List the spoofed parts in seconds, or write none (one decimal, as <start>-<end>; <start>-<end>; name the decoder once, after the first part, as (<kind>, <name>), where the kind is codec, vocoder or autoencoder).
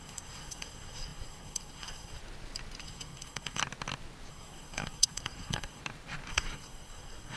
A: 0.0-2.2 (codec, SNAC); 2.8-3.6; 4.3-5.8; 6.3-7.4